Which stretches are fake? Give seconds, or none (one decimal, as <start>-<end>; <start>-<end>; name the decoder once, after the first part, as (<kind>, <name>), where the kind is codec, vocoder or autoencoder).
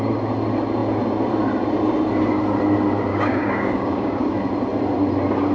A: 3.1-4.3 (codec, DAC)